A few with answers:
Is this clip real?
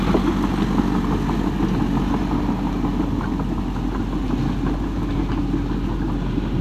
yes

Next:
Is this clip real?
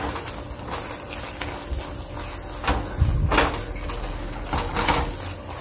yes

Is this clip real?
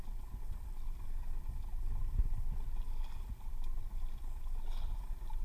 yes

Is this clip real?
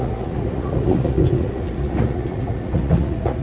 no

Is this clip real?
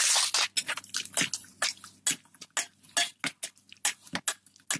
yes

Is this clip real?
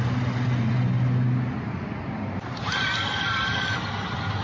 yes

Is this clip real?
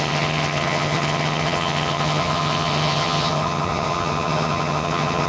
no